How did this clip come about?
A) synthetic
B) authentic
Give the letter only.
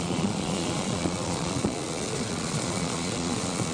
A